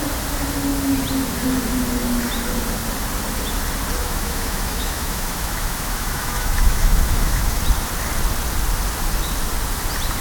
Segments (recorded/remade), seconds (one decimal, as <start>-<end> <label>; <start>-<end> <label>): 0.0-4.0 recorded; 4.0-7.6 remade; 7.6-10.2 recorded